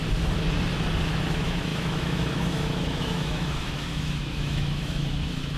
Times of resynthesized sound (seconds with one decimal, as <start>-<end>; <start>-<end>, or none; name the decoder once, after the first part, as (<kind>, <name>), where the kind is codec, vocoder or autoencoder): 1.2-5.6 (autoencoder, DAC-VAE)